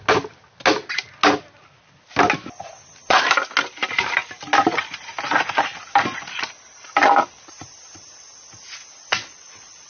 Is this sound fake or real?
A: real